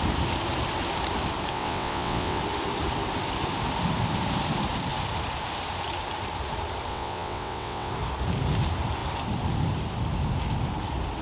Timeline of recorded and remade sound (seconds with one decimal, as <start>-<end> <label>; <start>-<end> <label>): 0.0-1.5 recorded; 1.5-2.4 remade; 2.4-6.9 recorded; 6.9-7.9 remade; 7.9-11.2 recorded